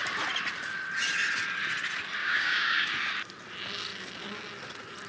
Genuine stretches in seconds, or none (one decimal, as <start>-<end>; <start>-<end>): 0.0-2.2; 2.9-5.1